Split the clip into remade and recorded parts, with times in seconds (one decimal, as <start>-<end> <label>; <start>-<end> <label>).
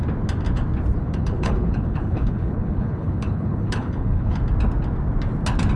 0.0-1.0 recorded; 1.0-4.4 remade; 4.4-5.8 recorded